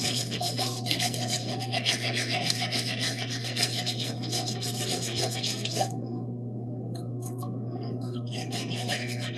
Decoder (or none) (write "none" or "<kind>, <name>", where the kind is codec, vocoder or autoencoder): codec, SNAC